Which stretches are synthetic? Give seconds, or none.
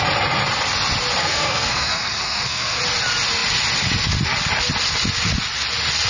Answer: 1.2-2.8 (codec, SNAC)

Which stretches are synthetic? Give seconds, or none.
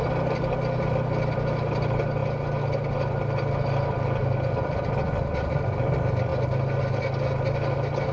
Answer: none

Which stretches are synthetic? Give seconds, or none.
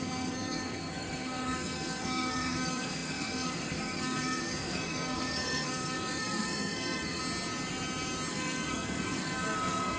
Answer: 0.0-7.2 (codec, SNAC); 8.3-10.0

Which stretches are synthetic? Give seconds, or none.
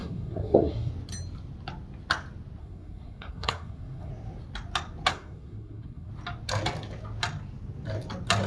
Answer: 0.0-0.9 (codec, SNAC); 2.6-4.1; 5.1-6.1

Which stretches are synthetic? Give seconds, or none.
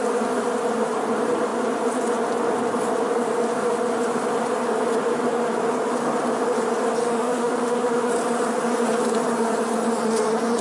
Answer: 7.0-8.1 (autoencoder, DAC-VAE)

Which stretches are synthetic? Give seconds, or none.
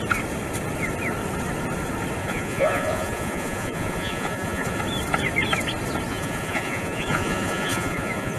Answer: 2.2-4.8 (vocoder, Vocos); 6.1-8.4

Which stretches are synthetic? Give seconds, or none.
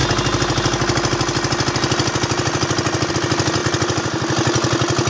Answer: none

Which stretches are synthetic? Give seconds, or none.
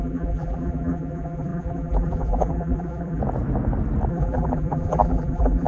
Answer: 0.0-3.2 (vocoder, BigVGAN v2); 4.1-5.7